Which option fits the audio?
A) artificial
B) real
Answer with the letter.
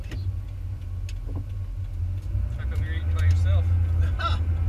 B